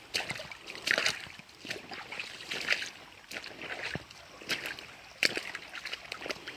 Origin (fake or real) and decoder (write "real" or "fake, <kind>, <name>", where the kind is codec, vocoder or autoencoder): real